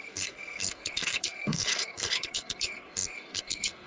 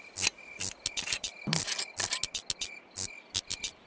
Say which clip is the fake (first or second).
first